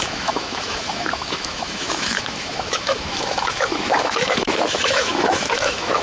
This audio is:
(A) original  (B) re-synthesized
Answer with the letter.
B